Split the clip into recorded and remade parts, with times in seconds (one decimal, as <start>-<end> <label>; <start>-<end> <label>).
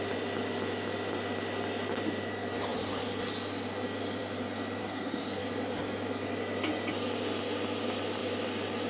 0.0-4.8 recorded; 4.8-5.4 remade; 5.4-8.9 recorded